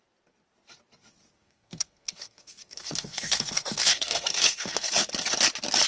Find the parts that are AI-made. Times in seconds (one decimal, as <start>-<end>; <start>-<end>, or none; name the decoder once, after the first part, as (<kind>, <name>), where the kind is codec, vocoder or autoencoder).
1.4-4.9 (codec, SNAC)